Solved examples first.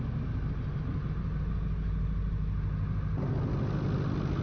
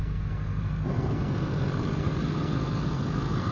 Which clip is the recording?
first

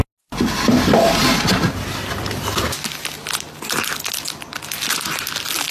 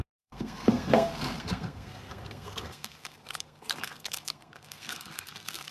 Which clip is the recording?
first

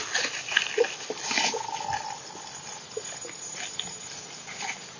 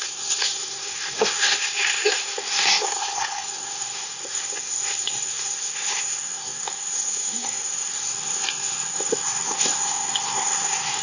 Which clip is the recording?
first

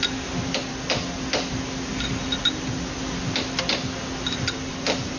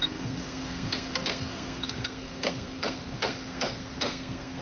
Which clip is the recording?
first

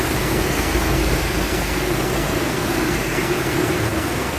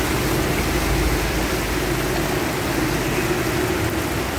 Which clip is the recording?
second